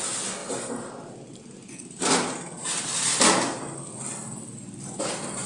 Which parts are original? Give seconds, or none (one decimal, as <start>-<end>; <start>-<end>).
0.0-5.5